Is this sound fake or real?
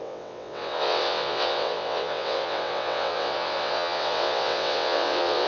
fake